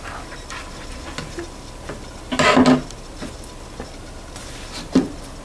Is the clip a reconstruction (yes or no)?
no